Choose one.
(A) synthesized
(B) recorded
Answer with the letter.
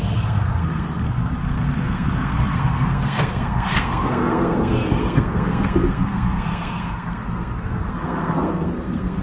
A